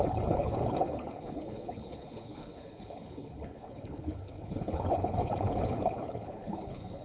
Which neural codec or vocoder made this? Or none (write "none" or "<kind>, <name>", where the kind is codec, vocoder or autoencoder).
codec, HILCodec